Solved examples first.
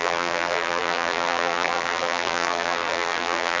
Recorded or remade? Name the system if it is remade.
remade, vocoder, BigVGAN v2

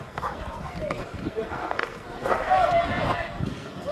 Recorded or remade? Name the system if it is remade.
remade, codec, SNAC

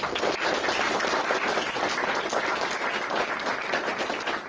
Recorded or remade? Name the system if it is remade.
recorded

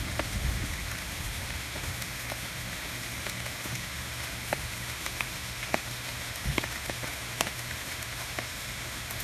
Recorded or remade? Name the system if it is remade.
remade, autoencoder, DAC-VAE